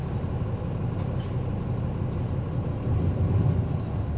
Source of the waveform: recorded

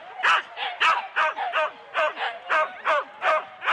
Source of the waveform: recorded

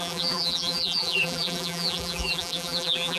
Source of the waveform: remade